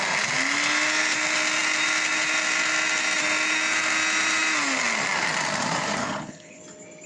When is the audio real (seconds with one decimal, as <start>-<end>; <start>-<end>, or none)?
0.0-6.0; 6.6-7.1